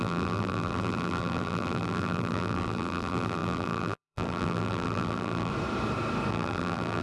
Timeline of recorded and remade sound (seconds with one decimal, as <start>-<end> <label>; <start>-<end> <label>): 0.0-5.5 remade; 5.5-6.3 recorded; 6.3-7.0 remade